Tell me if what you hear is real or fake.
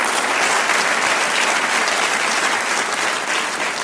real